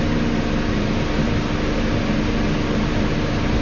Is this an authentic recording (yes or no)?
yes